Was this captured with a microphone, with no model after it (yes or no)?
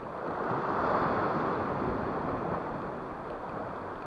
yes